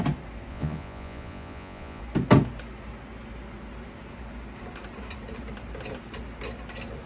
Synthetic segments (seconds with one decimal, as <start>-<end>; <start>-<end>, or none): 0.5-2.0